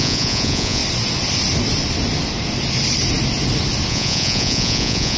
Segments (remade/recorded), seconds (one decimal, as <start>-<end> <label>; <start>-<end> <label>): 0.0-0.8 remade; 0.8-3.9 recorded; 3.9-5.2 remade